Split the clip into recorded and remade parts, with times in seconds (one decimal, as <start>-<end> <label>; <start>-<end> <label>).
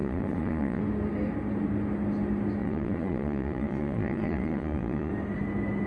0.0-0.8 remade; 0.8-2.6 recorded; 2.6-5.1 remade; 5.1-5.9 recorded